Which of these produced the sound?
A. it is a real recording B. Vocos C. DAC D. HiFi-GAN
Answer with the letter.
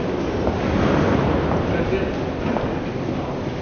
A